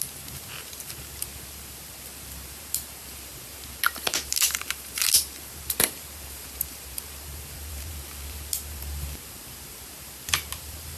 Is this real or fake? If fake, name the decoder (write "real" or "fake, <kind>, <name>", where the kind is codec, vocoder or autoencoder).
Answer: fake, vocoder, BigVGAN v2